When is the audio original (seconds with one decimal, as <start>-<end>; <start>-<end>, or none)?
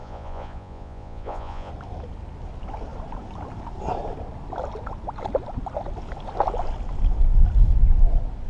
1.7-8.5